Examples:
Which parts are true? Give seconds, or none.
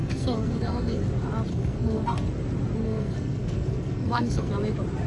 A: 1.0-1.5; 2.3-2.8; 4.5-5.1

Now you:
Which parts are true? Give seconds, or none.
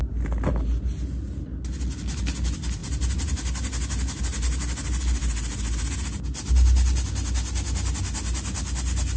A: 0.0-9.2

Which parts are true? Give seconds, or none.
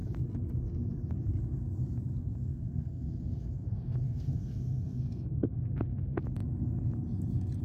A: 0.0-2.2; 5.6-7.6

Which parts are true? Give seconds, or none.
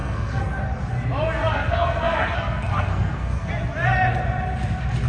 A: 0.5-1.4; 3.5-5.1